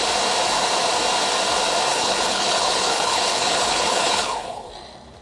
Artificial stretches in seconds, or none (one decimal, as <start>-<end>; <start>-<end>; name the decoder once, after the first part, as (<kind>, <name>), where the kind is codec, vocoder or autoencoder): 1.9-4.7 (codec, HILCodec)